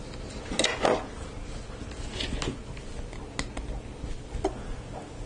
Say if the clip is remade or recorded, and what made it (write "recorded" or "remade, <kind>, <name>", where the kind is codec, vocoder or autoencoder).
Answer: recorded